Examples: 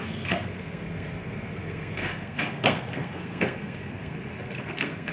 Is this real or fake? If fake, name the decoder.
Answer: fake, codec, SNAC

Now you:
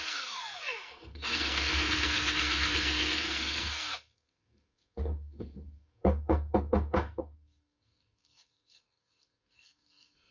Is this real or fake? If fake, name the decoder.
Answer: fake, codec, SNAC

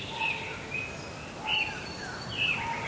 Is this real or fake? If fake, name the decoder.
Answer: real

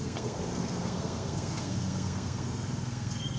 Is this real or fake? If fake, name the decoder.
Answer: fake, codec, SNAC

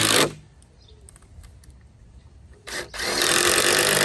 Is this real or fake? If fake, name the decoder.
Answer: real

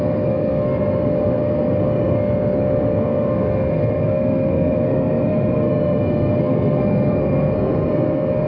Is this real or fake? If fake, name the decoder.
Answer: fake, codec, SNAC